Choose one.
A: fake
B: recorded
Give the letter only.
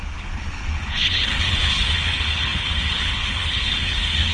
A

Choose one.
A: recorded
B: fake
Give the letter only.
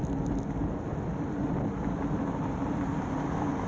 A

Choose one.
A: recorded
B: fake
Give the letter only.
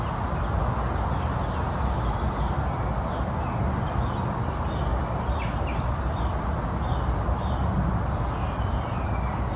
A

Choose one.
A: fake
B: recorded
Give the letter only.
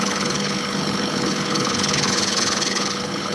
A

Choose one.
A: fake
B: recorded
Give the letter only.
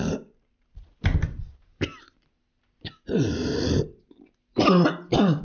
B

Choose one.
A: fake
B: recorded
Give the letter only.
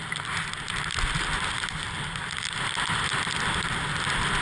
B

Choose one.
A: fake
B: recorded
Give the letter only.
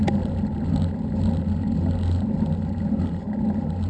B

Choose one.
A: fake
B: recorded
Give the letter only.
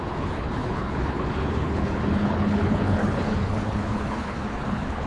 A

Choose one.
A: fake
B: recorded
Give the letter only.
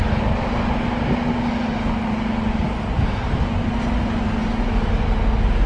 B